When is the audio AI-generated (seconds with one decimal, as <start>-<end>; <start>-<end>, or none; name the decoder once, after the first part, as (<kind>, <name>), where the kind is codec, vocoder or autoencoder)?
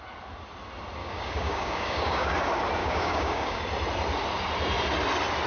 1.0-2.3 (codec, DAC); 2.8-3.6